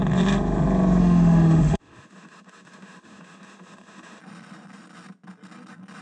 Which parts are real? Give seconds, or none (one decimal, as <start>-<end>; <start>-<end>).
0.0-1.0; 4.2-6.0